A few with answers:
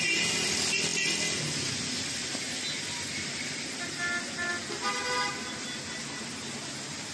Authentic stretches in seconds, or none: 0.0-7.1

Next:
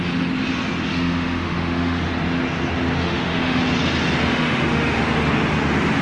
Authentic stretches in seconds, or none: 0.0-0.9; 2.0-3.0; 3.6-4.3; 5.0-6.0

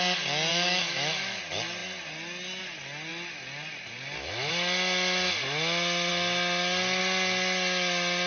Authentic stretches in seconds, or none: 0.0-0.5; 1.4-8.3

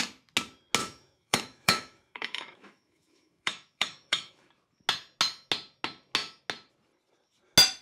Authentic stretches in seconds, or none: 0.0-0.8; 4.5-7.8

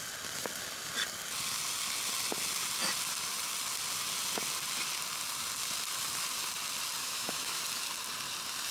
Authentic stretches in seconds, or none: 0.0-7.0; 7.6-8.7

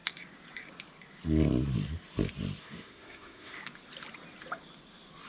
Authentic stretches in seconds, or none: 0.0-2.6; 3.6-5.3

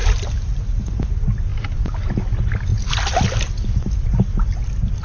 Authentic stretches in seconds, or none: 0.0-5.0